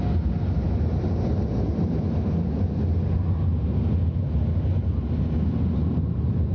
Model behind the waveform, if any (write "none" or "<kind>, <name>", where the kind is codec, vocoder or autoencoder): none